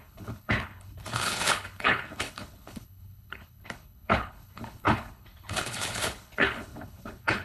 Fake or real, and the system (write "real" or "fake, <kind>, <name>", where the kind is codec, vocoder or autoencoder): fake, codec, HILCodec